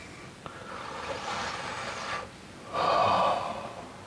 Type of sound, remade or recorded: recorded